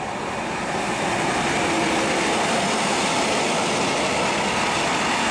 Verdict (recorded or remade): recorded